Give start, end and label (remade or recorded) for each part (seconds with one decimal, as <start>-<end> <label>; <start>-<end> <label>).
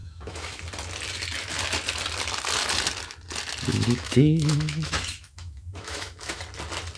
0.0-0.6 remade; 0.6-3.7 recorded; 3.7-6.4 remade; 6.4-7.0 recorded